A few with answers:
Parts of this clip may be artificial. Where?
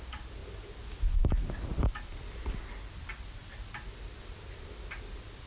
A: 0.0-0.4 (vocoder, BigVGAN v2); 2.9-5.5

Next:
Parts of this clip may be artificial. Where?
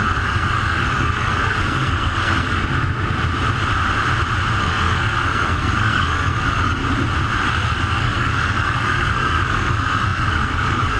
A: 0.0-2.6 (codec, SNAC); 4.6-6.8; 7.5-11.0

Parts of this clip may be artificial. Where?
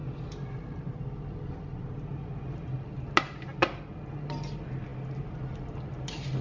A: none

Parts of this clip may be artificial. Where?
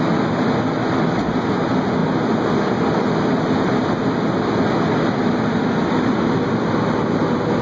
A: none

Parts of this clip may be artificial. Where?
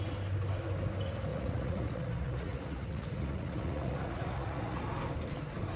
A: 1.3-4.8 (vocoder, Vocos)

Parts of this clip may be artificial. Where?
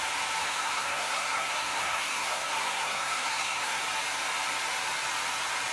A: 0.4-3.8 (codec, SNAC)